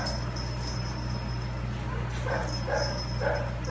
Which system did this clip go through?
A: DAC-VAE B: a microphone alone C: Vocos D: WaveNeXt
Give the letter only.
B